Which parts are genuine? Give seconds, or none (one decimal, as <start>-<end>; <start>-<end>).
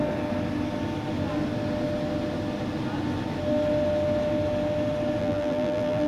0.0-5.2